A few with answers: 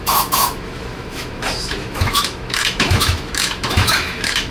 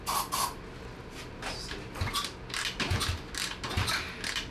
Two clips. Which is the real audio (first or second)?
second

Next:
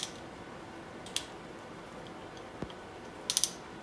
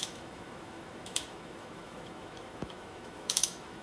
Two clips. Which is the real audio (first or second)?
first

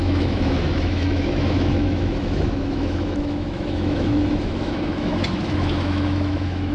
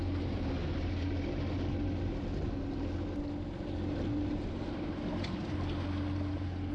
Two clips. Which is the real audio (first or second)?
second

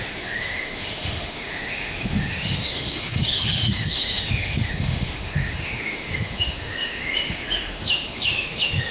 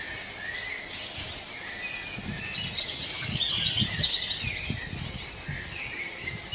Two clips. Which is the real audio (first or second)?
second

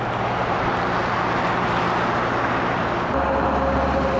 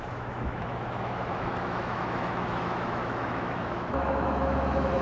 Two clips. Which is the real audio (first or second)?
first